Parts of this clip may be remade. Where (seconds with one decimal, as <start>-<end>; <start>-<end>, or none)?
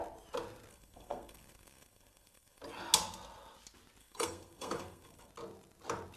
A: 0.7-2.6; 4.0-5.3